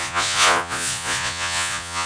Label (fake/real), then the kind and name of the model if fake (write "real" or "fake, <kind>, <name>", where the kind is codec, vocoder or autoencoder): fake, vocoder, Vocos